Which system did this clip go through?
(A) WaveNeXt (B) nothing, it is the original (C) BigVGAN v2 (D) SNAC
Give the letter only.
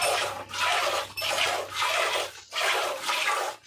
B